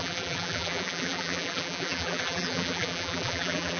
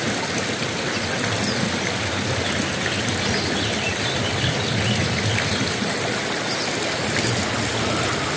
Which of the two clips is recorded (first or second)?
second